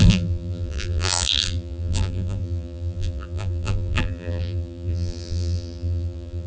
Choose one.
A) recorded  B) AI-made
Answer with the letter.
B